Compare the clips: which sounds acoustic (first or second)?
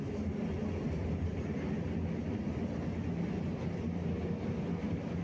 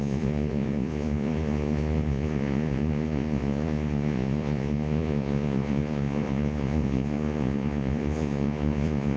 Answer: first